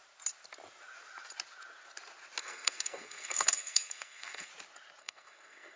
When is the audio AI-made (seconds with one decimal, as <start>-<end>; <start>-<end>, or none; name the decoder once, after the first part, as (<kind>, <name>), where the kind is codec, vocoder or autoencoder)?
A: 2.4-4.5 (codec, SNAC); 5.0-5.8